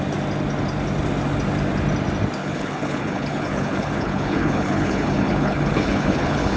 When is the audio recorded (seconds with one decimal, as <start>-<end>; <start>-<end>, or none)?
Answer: 0.0-2.4